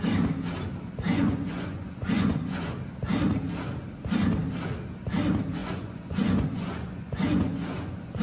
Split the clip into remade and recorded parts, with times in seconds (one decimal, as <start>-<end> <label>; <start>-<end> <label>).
0.0-1.1 recorded; 1.1-2.8 remade; 2.8-5.6 recorded; 5.6-8.2 remade